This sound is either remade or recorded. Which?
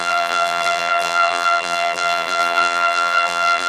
remade